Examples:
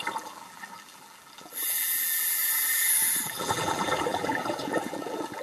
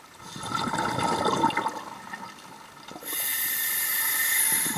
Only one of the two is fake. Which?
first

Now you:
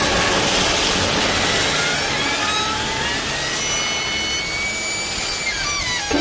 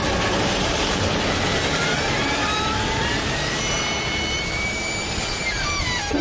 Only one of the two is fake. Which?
second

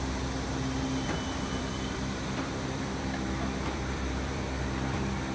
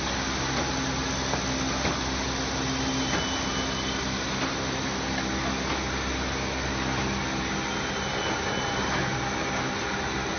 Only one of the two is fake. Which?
first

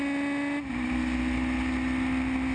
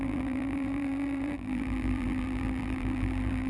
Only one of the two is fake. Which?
second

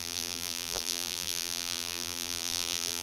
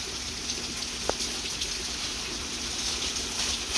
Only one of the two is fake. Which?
first